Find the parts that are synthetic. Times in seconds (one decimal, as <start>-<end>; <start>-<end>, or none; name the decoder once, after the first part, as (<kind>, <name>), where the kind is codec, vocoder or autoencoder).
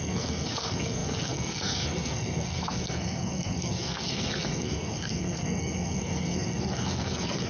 0.0-7.5 (codec, SNAC)